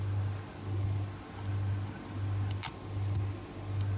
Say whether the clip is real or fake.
real